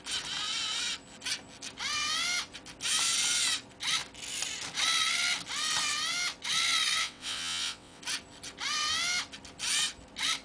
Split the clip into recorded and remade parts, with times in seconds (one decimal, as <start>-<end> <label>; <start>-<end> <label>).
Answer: 0.0-7.0 recorded; 7.0-8.0 remade; 8.0-10.4 recorded

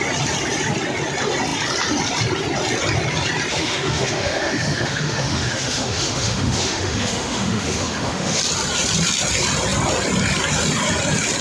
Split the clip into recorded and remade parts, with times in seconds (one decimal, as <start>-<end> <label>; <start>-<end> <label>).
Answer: 0.0-3.5 recorded; 3.5-8.4 remade; 8.4-11.4 recorded

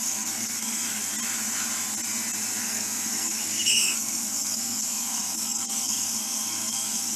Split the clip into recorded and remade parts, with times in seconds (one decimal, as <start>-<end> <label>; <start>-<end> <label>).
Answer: 0.0-1.0 remade; 1.0-2.6 recorded; 2.6-7.2 remade

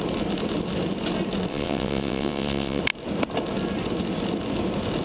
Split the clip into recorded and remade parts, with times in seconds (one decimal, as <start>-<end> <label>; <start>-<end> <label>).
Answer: 0.0-1.5 recorded; 1.5-2.8 remade; 2.8-5.0 recorded

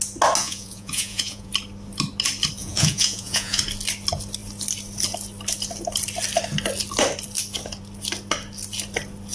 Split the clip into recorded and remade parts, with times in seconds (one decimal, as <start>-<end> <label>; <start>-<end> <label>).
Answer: 0.0-0.4 recorded; 0.4-1.5 remade; 1.5-2.6 recorded; 2.6-3.6 remade; 3.6-9.3 recorded

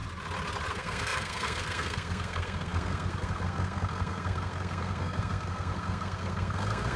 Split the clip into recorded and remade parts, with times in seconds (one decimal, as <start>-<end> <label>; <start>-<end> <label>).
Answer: 0.0-0.7 recorded; 0.7-7.0 remade

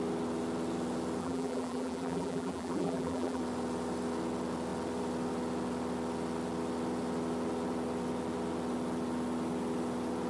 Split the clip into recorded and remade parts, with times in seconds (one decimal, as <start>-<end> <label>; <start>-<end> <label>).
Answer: 0.0-1.2 recorded; 1.2-3.4 remade; 3.4-10.3 recorded